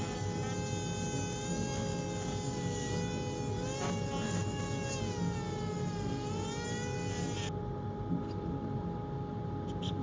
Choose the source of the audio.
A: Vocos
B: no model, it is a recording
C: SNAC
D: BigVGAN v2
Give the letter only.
B